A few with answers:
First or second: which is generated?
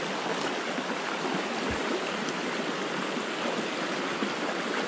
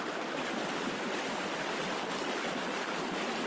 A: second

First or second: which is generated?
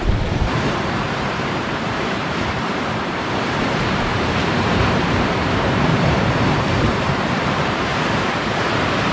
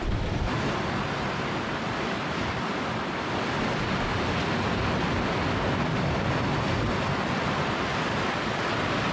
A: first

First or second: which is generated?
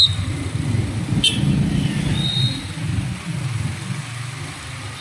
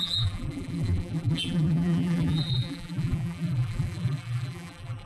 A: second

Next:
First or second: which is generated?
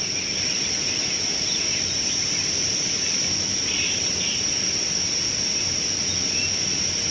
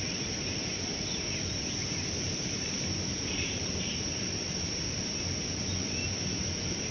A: second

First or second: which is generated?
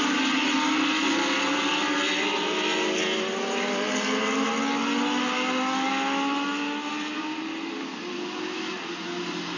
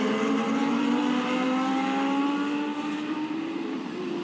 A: second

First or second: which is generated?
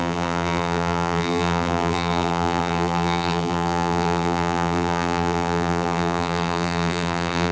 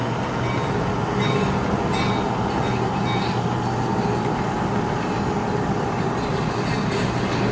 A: first